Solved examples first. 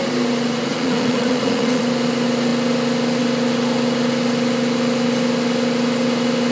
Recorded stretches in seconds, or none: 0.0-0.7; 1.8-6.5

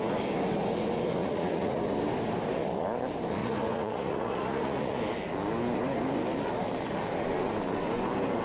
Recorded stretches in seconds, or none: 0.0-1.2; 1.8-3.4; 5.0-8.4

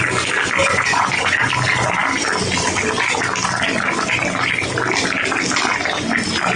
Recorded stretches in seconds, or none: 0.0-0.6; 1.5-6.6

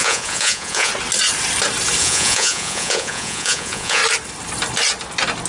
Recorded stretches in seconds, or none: 0.9-2.0; 4.0-5.5

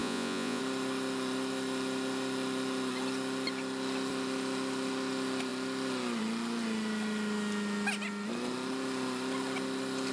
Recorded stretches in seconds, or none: 0.6-10.1